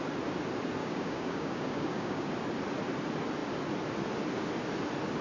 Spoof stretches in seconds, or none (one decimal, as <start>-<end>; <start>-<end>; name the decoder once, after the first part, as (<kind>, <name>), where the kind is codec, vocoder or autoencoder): 0.8-2.3 (codec, DAC)